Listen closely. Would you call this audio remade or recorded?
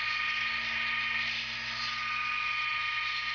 recorded